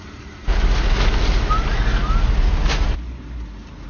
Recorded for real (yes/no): yes